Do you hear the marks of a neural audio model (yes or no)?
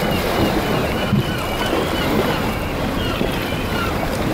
no